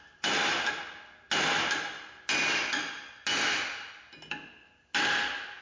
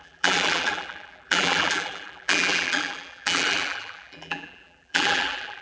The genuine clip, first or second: first